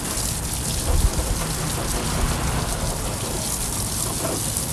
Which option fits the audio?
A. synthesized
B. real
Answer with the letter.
B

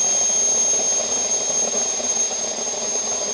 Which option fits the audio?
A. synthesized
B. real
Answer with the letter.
B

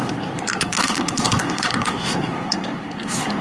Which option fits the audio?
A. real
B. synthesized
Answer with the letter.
B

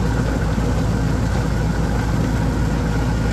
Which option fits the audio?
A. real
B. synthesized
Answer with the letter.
A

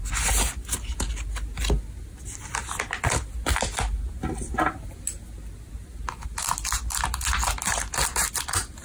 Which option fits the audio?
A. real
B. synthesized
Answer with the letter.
A